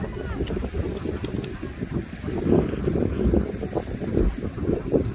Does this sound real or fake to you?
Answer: real